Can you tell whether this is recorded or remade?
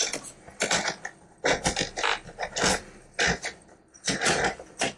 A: recorded